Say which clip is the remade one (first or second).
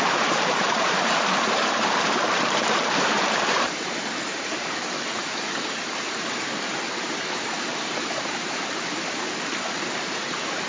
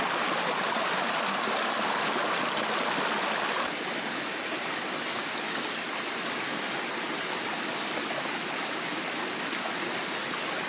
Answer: first